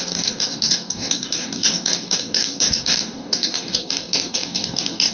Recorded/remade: remade